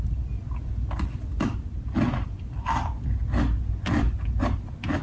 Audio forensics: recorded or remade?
recorded